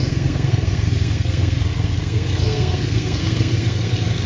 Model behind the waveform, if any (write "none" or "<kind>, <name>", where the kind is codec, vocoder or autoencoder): codec, SNAC